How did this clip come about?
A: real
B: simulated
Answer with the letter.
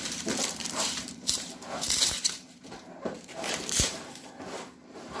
B